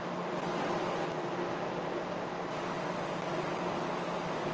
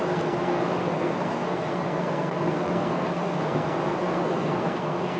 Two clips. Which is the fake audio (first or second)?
second